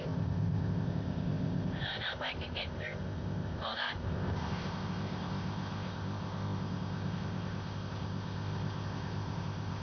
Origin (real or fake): fake